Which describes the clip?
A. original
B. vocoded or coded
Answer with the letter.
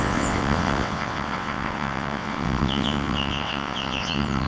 B